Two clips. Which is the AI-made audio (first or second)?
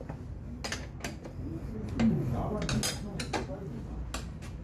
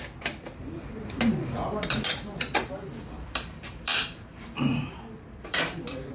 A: second